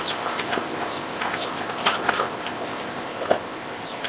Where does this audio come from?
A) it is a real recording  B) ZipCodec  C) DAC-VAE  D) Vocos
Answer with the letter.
B